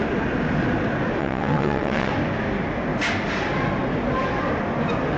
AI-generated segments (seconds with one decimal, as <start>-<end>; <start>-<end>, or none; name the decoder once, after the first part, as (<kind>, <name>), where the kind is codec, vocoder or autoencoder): 1.2-2.1 (vocoder, WaveNeXt)